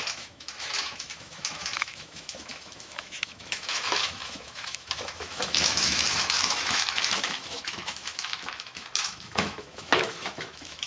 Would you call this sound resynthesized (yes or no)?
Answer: yes